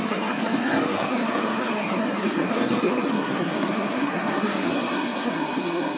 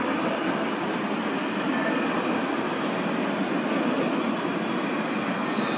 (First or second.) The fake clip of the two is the first